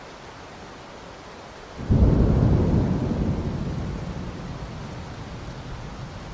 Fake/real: real